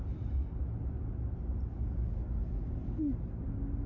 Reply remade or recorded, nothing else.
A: recorded